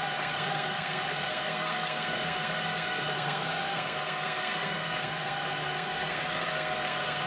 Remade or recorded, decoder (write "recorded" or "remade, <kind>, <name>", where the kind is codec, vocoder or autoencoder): remade, codec, SNAC